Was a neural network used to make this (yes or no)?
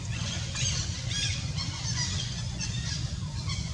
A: yes